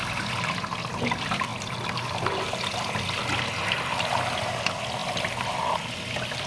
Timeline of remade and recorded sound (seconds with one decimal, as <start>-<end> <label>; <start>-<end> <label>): 0.0-6.5 recorded